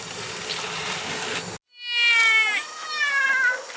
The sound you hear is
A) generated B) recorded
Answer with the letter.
B